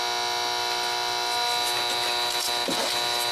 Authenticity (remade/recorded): recorded